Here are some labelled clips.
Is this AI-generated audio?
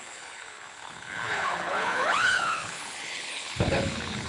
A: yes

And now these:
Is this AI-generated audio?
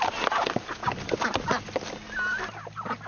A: no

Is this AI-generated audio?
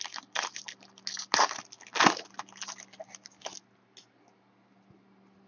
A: no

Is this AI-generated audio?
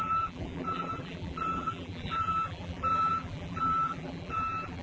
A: yes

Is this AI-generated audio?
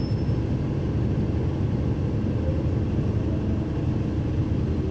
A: no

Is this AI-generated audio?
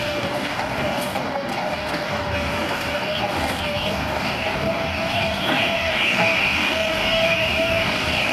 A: yes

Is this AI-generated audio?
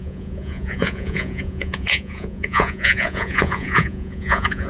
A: yes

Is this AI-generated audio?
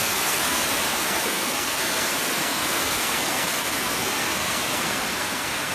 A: yes